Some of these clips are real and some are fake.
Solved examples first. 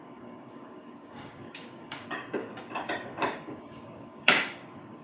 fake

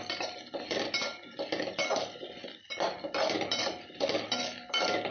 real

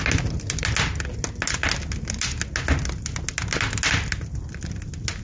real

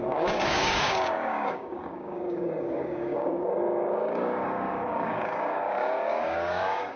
fake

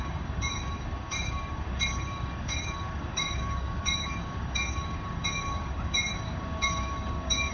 fake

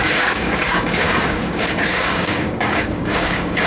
fake